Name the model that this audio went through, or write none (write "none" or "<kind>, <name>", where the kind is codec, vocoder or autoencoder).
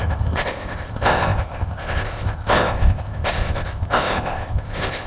codec, ZipCodec